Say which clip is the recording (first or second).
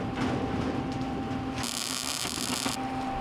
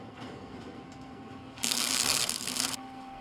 first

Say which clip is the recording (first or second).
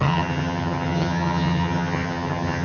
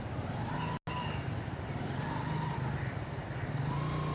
second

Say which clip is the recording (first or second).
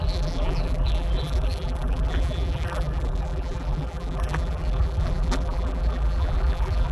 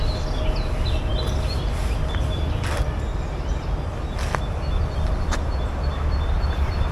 second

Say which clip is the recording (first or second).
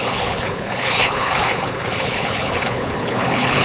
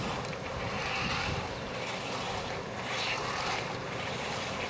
second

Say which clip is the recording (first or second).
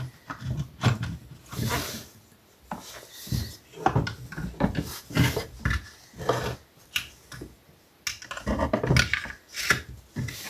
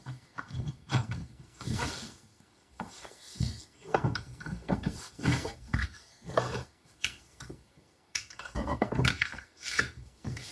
first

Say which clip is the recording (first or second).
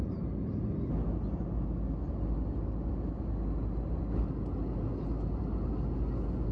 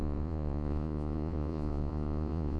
first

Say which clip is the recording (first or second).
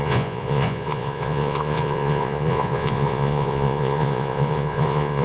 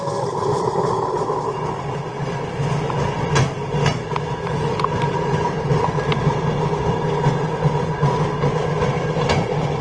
second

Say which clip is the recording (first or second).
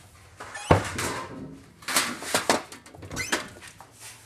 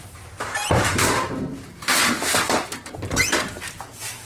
first